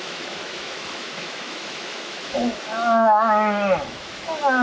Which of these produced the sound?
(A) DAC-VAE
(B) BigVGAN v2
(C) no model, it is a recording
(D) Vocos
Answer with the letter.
A